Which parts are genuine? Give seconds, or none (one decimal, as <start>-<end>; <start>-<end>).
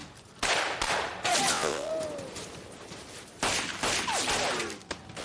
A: 0.0-1.5; 1.9-5.2